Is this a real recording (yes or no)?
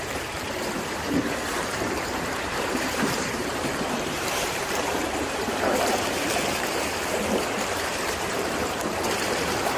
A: no